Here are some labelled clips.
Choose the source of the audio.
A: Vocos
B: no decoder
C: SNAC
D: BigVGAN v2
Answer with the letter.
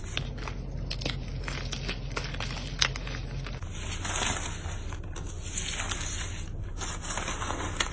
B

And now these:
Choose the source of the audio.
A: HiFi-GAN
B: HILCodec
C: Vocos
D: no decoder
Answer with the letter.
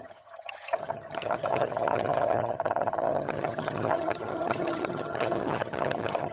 A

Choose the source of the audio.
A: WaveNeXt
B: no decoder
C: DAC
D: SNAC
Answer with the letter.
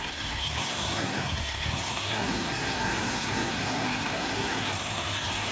D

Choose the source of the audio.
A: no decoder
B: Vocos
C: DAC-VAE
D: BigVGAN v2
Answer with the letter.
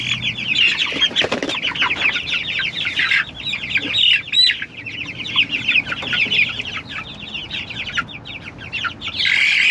A